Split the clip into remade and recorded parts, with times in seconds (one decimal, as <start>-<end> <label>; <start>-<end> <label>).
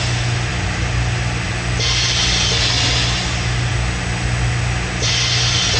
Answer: 0.0-5.8 recorded